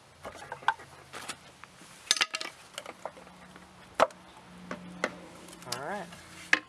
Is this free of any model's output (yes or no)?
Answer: yes